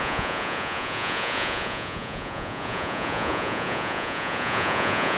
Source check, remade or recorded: remade